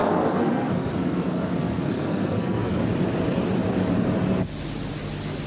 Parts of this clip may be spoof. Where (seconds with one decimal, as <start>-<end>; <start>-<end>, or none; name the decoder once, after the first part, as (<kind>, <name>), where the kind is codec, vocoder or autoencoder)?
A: 0.0-2.8 (codec, SNAC)